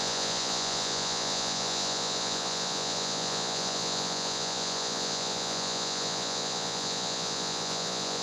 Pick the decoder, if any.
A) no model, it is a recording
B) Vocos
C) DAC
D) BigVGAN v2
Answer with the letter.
B